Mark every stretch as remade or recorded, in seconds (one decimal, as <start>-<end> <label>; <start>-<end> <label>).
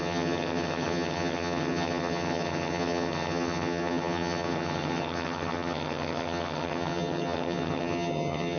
0.0-8.6 remade